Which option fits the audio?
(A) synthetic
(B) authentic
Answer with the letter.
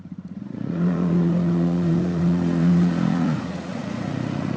A